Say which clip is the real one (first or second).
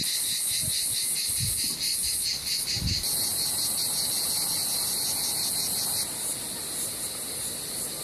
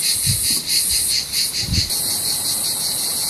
first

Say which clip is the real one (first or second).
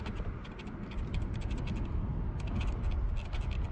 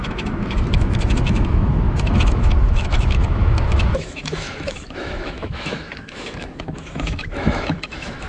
first